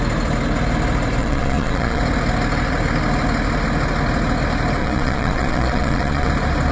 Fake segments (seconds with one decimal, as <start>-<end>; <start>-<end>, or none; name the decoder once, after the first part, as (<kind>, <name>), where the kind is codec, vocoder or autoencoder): 1.2-2.0 (vocoder, Vocos); 4.8-6.3